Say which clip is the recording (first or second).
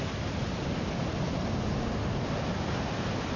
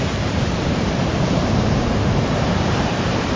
first